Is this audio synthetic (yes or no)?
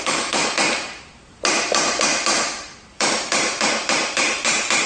yes